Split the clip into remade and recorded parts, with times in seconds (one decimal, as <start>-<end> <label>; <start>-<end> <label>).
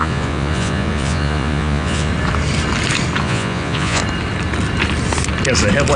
0.0-2.1 remade; 2.1-3.2 recorded; 3.2-4.0 remade; 4.0-6.0 recorded